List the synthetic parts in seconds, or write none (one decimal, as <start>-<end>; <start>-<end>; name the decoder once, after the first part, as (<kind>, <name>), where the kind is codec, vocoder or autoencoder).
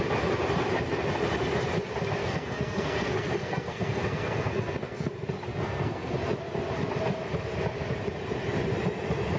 2.2-5.1 (codec, SNAC); 5.5-6.1